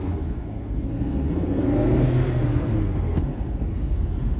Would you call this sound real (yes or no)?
no